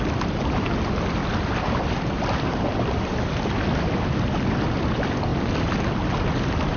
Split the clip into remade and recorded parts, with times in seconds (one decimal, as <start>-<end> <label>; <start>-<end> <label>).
0.0-6.8 recorded

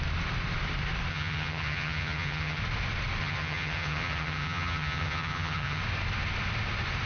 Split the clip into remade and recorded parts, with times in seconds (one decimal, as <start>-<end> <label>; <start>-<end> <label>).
0.0-1.1 recorded; 1.1-2.6 remade; 2.6-3.2 recorded; 3.2-5.8 remade; 5.8-7.1 recorded

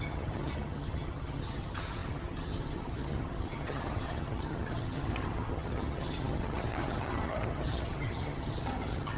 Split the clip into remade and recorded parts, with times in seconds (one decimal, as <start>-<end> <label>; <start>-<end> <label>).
0.0-9.2 remade